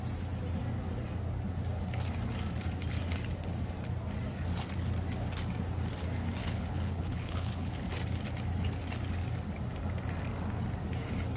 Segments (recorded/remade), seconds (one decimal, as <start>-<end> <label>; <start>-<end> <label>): 0.0-6.4 recorded; 6.4-7.7 remade; 7.7-11.4 recorded